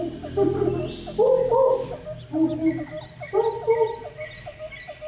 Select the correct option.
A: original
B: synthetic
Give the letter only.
A